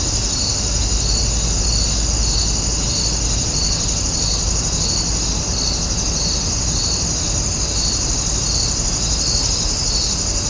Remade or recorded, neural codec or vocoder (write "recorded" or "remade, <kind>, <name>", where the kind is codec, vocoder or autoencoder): recorded